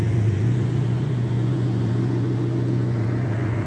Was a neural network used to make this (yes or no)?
yes